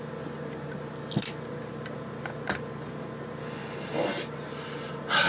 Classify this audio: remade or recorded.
recorded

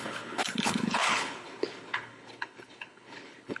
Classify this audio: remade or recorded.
remade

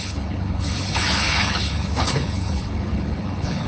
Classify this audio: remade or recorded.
remade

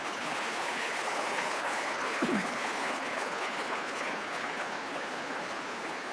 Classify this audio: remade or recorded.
remade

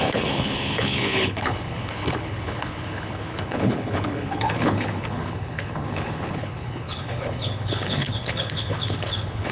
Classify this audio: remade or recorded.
remade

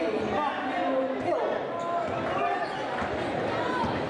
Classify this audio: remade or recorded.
recorded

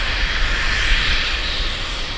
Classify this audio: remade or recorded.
recorded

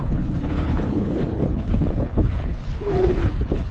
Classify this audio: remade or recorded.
remade